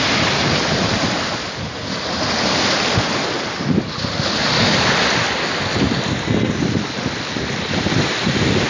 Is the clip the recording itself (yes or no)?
yes